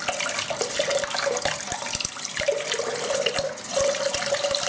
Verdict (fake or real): real